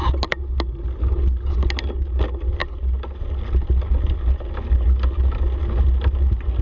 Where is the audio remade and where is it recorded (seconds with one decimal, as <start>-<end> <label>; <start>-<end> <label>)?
0.0-6.6 recorded

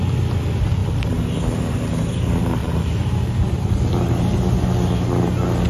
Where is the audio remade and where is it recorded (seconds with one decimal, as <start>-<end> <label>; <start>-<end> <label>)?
0.0-2.6 recorded; 2.6-3.9 remade; 3.9-5.7 recorded

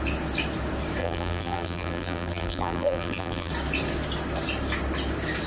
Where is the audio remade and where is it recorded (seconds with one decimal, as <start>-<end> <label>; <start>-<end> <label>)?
0.0-1.0 recorded; 1.0-3.5 remade; 3.5-5.5 recorded

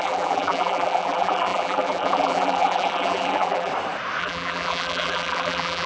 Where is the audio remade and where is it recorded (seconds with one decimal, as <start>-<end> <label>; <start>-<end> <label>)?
0.0-3.7 remade; 3.7-4.2 recorded; 4.2-5.9 remade

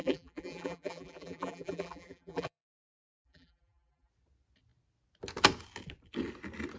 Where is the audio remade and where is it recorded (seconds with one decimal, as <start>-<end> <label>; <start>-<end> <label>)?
0.0-4.1 remade; 4.1-6.8 recorded

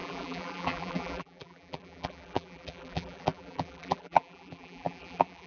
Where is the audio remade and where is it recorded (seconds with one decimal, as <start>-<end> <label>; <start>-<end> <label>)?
0.0-5.5 remade

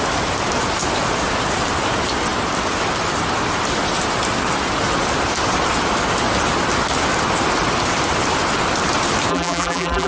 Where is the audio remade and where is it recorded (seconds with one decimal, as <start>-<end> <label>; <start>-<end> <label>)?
0.0-9.3 recorded; 9.3-10.1 remade

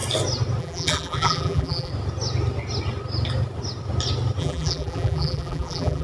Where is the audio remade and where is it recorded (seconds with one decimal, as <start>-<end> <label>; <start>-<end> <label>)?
0.0-0.6 recorded; 0.6-1.9 remade; 1.9-4.4 recorded; 4.4-6.0 remade